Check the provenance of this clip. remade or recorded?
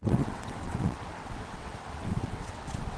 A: remade